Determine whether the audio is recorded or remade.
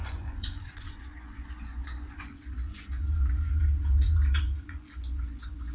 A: remade